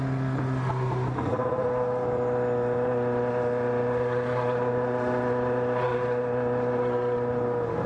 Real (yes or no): yes